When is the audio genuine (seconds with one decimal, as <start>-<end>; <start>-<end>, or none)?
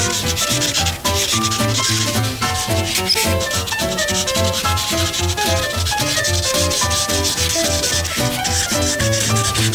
0.0-9.7